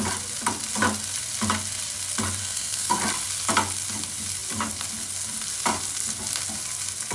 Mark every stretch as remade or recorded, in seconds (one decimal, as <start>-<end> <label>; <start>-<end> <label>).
0.0-2.4 recorded; 2.4-2.9 remade; 2.9-7.1 recorded